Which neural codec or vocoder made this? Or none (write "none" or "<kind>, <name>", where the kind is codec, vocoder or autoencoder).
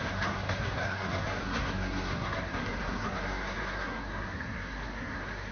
codec, SNAC